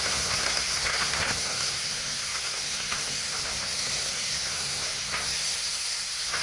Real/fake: fake